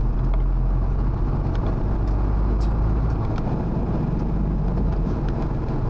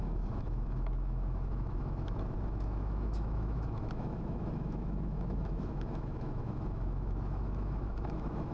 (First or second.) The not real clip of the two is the second